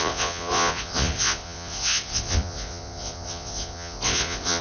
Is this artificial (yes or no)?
yes